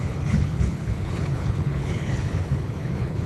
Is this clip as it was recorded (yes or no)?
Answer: no